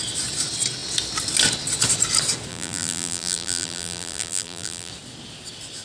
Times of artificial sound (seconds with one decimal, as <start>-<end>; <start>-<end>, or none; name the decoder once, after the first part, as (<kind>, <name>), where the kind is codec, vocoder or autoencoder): 2.5-4.9 (vocoder, BigVGAN v2)